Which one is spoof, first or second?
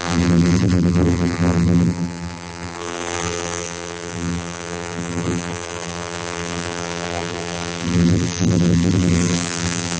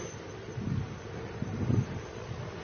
first